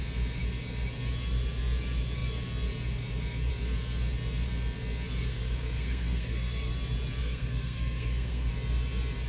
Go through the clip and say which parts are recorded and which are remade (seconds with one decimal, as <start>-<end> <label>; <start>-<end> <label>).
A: 0.0-5.3 recorded; 5.3-6.7 remade; 6.7-7.2 recorded; 7.2-8.5 remade; 8.5-9.3 recorded

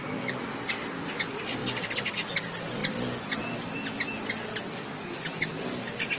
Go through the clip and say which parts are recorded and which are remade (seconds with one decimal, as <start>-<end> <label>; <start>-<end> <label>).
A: 0.0-6.2 recorded

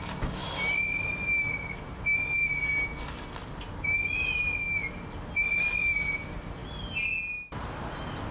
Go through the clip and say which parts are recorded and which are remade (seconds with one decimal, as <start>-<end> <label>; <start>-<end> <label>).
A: 0.0-8.3 recorded

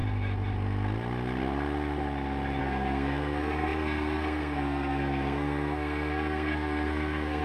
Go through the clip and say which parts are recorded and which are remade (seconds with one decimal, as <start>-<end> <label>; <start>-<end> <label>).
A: 0.0-2.6 recorded; 2.6-7.4 remade

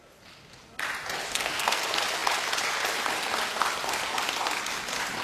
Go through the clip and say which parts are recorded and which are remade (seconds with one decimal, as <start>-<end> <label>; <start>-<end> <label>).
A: 0.0-1.3 recorded; 1.3-1.8 remade; 1.8-5.2 recorded

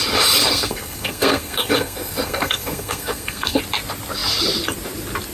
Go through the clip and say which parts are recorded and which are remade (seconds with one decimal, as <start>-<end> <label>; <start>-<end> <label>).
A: 0.0-0.4 recorded; 0.4-3.6 remade; 3.6-5.3 recorded

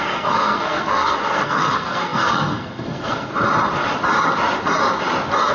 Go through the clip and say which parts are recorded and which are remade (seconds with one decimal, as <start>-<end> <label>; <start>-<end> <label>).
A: 0.0-3.3 remade; 3.3-5.5 recorded

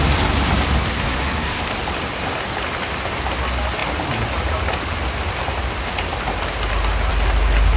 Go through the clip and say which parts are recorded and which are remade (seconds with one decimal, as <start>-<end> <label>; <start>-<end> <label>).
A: 0.0-0.9 recorded; 0.9-1.6 remade; 1.6-7.8 recorded